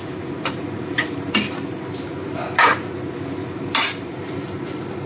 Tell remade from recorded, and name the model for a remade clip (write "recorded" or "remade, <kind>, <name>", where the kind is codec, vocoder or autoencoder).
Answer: remade, vocoder, BigVGAN v2